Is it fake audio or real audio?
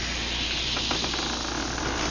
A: real